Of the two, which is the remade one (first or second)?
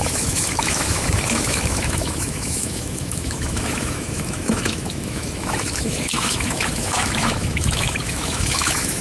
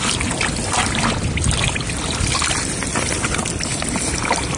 first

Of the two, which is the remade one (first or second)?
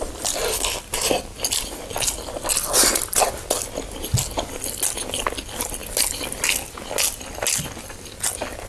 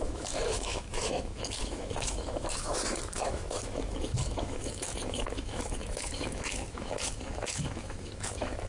second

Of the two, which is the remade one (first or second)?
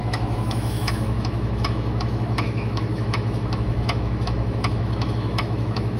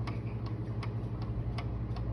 first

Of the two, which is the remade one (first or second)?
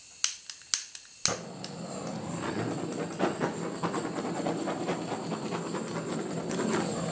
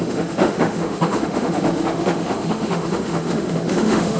second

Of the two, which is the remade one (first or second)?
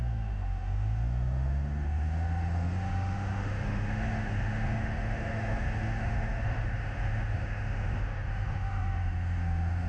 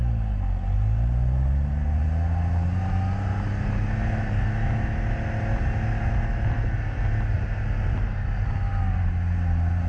first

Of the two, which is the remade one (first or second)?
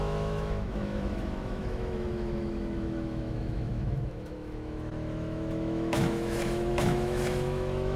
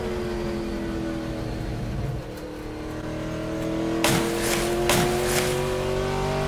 first